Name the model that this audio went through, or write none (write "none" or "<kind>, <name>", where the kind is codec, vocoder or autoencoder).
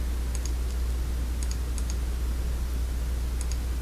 none